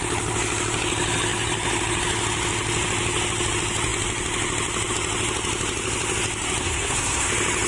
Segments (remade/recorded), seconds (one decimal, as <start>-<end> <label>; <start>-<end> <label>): 0.0-6.6 recorded; 6.6-7.3 remade; 7.3-7.7 recorded